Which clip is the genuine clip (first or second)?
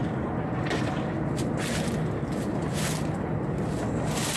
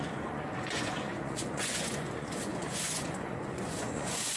first